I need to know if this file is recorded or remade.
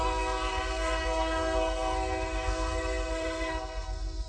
remade